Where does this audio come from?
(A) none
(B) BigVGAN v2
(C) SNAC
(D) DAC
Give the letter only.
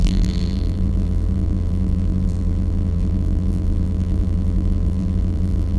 B